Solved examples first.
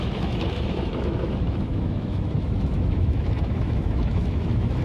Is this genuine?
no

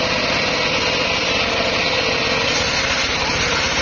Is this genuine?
yes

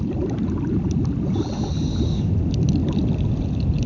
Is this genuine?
yes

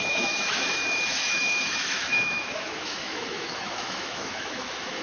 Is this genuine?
no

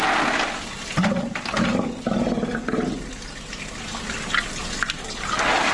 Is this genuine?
yes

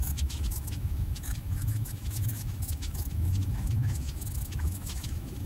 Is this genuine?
no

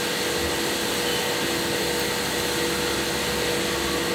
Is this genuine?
yes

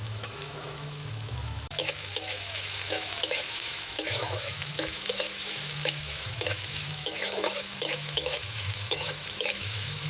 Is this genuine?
no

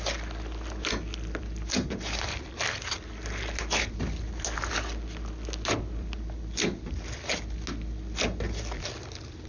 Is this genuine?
yes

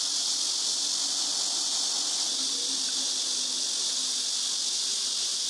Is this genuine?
yes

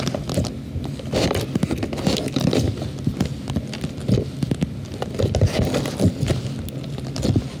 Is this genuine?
yes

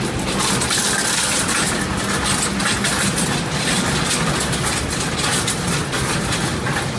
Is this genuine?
yes